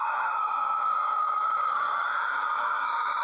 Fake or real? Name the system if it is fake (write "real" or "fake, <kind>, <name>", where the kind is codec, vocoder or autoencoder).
real